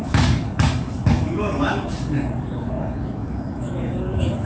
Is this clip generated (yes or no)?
yes